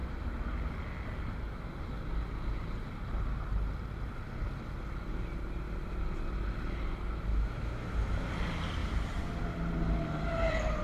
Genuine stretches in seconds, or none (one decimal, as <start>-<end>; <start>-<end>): 0.0-7.3; 8.3-10.8